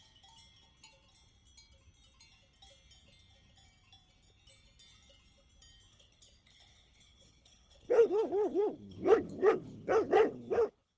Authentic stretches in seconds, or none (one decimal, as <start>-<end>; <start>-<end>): 0.0-5.9